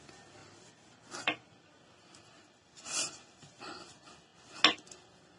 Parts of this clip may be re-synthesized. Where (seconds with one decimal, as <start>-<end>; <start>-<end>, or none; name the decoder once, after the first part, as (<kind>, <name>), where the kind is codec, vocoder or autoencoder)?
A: 0.4-3.6 (vocoder, BigVGAN v2)